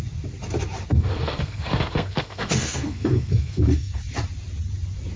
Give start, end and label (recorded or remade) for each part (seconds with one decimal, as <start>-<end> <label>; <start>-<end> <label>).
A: 0.0-0.9 recorded; 0.9-4.0 remade; 4.0-5.2 recorded